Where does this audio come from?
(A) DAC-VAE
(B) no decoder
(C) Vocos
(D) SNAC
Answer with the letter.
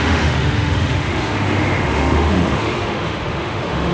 A